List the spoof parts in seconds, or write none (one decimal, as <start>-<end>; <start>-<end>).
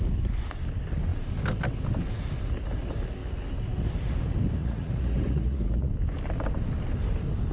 4.6-5.9